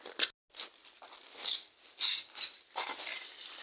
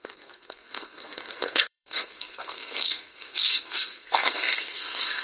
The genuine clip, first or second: first